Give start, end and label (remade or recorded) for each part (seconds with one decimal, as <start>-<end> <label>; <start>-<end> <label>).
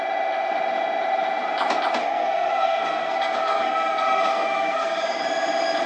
0.0-2.0 recorded; 2.0-5.2 remade; 5.2-5.9 recorded